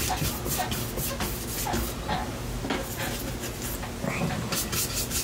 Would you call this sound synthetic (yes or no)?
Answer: no